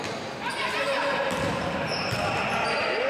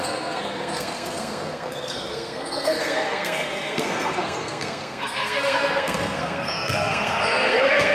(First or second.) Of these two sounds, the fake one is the second